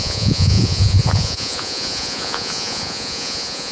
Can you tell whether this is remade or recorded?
remade